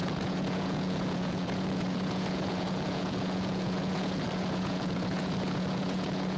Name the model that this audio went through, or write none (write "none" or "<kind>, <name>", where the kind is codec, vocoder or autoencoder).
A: vocoder, Vocos